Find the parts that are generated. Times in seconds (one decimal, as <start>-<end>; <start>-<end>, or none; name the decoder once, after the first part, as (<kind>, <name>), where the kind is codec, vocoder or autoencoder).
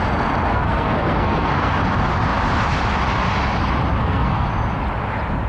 0.5-1.8 (codec, SNAC); 4.0-4.5